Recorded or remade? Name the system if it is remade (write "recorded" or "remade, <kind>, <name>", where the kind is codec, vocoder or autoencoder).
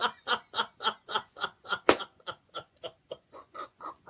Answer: remade, vocoder, Vocos